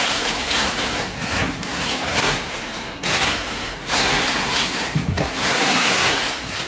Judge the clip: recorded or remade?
remade